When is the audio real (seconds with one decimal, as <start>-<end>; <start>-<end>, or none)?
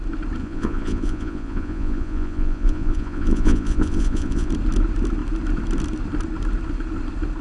0.0-0.4; 4.5-7.4